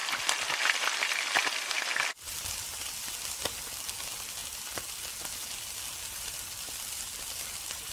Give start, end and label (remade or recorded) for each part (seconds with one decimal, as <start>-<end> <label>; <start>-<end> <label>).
0.0-7.9 recorded